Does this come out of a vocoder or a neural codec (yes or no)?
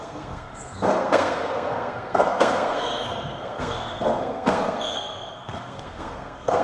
yes